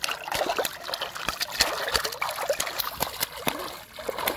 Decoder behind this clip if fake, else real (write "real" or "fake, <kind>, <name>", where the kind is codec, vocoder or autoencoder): real